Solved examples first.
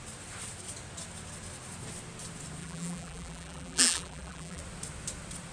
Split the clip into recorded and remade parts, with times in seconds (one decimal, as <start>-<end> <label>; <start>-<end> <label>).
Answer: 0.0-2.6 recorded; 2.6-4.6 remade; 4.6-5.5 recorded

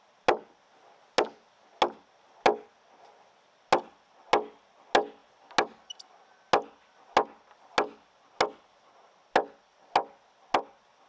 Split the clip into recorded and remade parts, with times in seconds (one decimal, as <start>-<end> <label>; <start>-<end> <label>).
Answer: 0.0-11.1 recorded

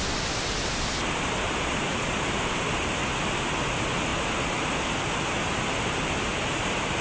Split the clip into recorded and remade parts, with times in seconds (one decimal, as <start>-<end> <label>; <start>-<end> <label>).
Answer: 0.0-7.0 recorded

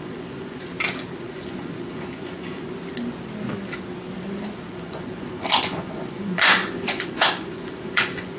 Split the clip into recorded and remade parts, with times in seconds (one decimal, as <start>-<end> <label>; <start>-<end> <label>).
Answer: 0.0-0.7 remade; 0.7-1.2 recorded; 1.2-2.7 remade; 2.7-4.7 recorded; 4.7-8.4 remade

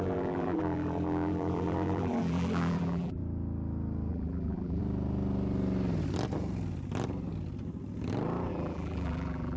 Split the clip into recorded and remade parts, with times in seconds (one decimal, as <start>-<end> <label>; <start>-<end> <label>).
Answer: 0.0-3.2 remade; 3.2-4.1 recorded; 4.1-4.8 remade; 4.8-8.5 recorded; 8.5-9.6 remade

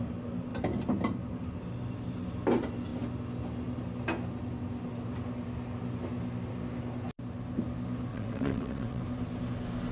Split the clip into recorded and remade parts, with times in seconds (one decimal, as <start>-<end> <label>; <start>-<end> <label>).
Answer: 0.0-8.1 recorded; 8.1-9.0 remade; 9.0-9.9 recorded

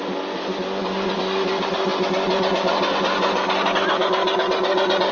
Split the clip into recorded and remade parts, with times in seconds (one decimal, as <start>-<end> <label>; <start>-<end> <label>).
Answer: 0.0-5.1 recorded